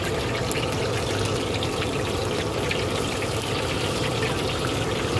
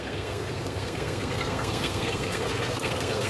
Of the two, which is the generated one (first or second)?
second